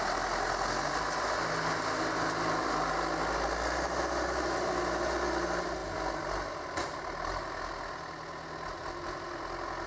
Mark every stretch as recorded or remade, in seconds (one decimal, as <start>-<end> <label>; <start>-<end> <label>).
0.0-9.9 recorded